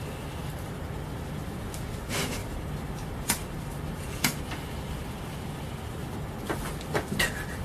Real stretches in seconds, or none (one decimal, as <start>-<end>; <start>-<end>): 0.0-2.4; 5.4-7.6